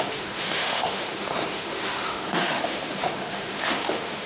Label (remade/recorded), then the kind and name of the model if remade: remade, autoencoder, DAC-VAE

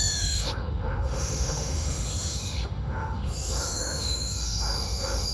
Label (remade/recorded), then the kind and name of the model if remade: remade, autoencoder, DAC-VAE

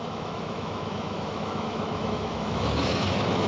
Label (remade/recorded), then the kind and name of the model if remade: remade, autoencoder, DAC-VAE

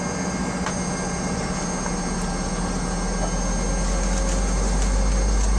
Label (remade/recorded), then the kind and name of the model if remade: recorded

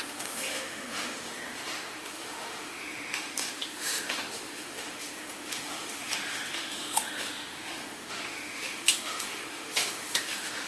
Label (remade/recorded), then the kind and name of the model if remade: remade, autoencoder, DAC-VAE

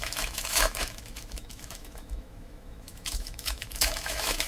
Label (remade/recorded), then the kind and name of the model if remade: remade, autoencoder, DAC-VAE